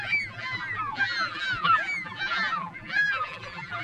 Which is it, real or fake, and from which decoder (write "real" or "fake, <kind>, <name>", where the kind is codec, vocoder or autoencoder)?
fake, vocoder, BigVGAN v2